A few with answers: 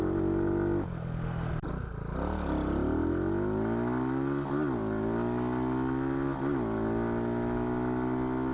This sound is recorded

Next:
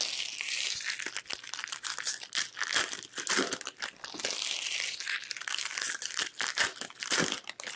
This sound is recorded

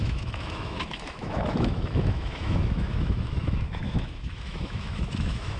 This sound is remade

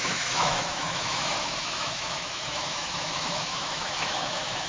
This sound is remade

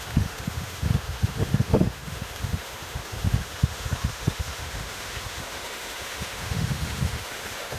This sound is remade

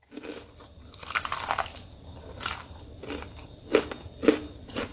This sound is recorded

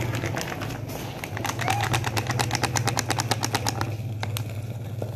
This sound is recorded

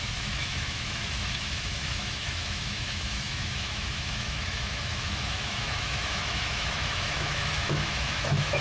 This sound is remade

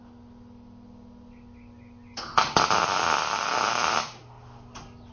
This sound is recorded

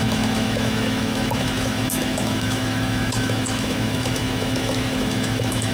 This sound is remade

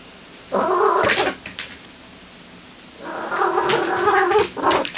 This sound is recorded